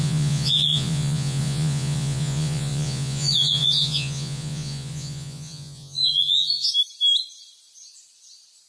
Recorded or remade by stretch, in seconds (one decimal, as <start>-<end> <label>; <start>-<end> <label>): 0.0-6.7 remade; 6.7-8.7 recorded